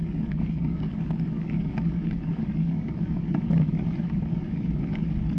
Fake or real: fake